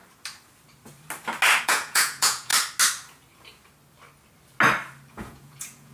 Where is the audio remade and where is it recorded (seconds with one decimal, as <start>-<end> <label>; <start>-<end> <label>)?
0.0-1.6 recorded; 1.6-2.5 remade; 2.5-5.1 recorded; 5.1-5.9 remade